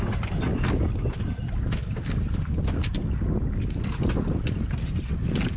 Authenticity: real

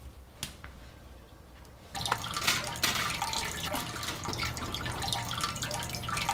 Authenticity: real